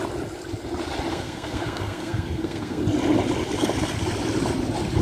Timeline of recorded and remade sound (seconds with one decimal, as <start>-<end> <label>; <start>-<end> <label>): 0.0-1.1 recorded; 1.1-2.8 remade; 2.8-5.0 recorded